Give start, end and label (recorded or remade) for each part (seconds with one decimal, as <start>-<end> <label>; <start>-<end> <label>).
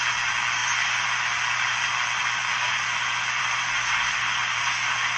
0.0-5.2 recorded